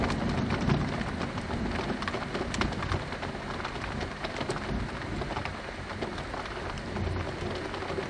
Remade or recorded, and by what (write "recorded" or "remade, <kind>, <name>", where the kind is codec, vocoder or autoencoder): recorded